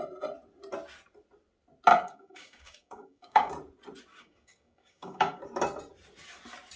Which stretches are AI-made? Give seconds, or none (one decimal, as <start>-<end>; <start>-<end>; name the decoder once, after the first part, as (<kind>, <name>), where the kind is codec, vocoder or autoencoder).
1.9-3.5 (codec, DAC); 4.1-5.4